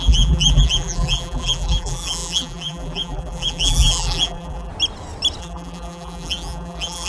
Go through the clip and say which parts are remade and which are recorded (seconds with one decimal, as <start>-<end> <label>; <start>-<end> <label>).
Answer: 0.0-4.7 remade; 4.7-5.4 recorded; 5.4-7.1 remade